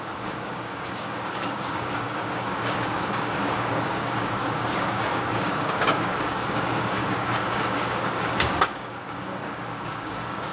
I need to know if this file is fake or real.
fake